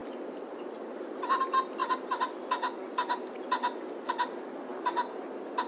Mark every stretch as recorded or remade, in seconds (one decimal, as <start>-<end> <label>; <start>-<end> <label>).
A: 0.0-5.7 recorded